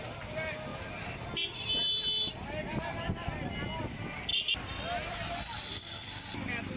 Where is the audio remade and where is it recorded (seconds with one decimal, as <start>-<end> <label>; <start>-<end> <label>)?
0.0-6.8 recorded